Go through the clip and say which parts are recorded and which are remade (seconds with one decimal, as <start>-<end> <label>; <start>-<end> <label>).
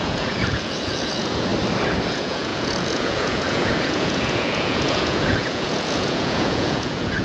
0.0-1.5 remade; 1.5-2.1 recorded; 2.1-7.2 remade